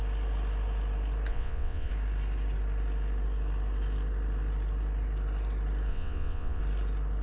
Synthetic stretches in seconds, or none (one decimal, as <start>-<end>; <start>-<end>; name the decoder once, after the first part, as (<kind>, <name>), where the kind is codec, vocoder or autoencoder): 1.3-1.9 (vocoder, WaveNeXt); 5.9-6.6